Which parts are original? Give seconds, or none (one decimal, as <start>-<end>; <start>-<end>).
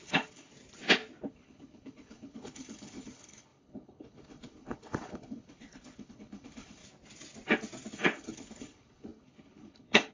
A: 0.5-1.3; 6.8-7.9